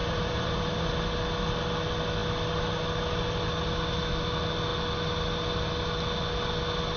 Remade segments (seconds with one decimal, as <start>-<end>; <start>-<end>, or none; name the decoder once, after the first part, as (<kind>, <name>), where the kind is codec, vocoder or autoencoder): 0.0-0.9 (vocoder, BigVGAN v2)